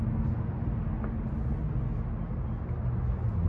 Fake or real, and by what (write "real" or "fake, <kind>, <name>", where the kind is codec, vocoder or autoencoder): real